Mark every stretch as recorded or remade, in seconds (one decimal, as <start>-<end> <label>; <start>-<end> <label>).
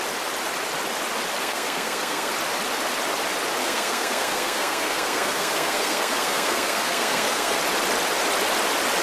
0.0-1.4 recorded; 1.4-2.3 remade; 2.3-3.6 recorded; 3.6-7.6 remade; 7.6-9.0 recorded